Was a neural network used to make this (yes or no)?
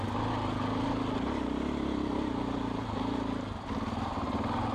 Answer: no